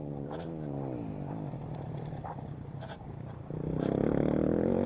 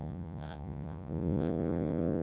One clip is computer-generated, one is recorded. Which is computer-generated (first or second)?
second